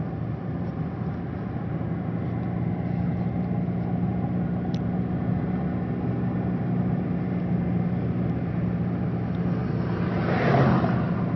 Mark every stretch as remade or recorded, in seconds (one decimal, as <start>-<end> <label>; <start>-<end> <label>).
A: 0.0-9.6 recorded; 9.6-10.2 remade; 10.2-11.4 recorded